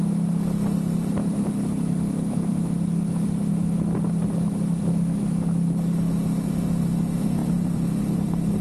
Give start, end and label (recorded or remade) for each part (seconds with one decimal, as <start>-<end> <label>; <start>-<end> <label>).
0.0-7.4 recorded; 7.4-7.9 remade; 7.9-8.6 recorded